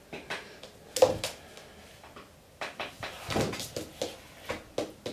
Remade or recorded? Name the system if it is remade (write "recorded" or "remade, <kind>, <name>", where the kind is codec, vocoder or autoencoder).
recorded